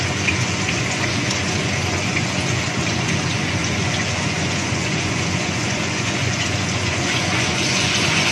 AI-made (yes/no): yes